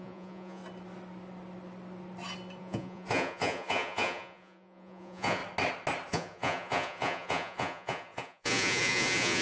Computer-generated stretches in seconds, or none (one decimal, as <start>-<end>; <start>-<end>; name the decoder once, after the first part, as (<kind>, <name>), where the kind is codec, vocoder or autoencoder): 0.0-0.6 (vocoder, Vocos); 2.6-5.4; 6.1-9.4